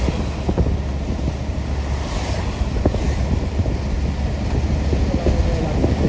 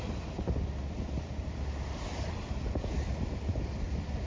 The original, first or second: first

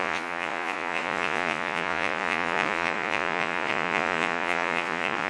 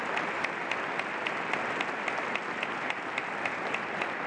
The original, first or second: second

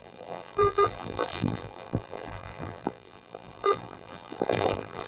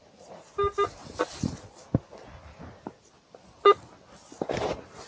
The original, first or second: second